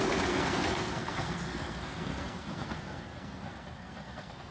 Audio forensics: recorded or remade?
remade